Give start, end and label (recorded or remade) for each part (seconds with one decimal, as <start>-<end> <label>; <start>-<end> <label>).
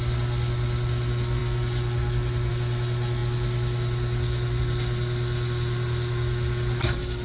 0.0-7.2 recorded